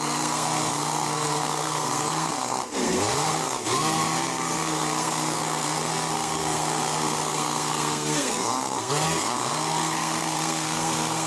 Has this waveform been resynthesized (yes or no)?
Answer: yes